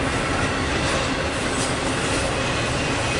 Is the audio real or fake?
real